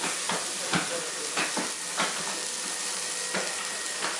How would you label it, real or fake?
real